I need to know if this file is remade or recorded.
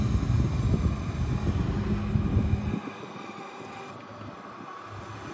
recorded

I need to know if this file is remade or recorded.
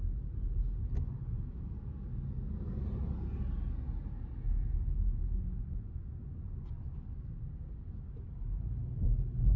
recorded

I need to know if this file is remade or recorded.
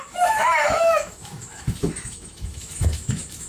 remade